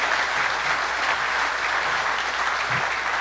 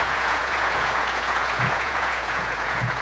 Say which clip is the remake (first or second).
second